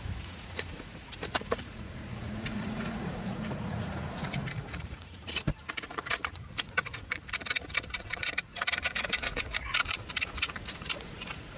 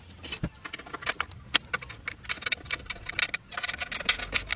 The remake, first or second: first